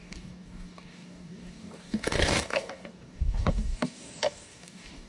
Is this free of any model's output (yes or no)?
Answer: no